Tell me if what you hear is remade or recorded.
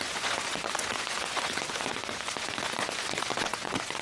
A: remade